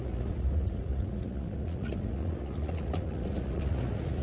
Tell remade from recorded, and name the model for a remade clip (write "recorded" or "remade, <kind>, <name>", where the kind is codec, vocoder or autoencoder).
remade, vocoder, Vocos